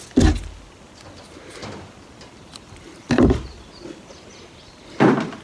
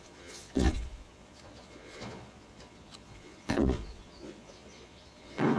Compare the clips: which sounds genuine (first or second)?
first